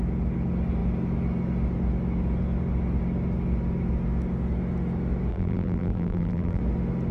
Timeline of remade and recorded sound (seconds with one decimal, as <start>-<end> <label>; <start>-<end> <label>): 0.0-5.3 recorded; 5.3-6.6 remade; 6.6-7.1 recorded